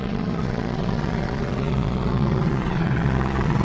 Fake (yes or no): yes